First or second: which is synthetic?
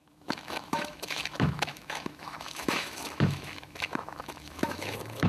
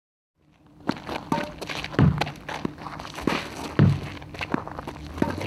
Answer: first